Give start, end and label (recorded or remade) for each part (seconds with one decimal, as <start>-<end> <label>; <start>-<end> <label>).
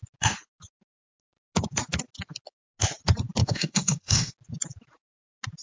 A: 0.0-3.4 recorded; 3.4-4.3 remade; 4.3-5.6 recorded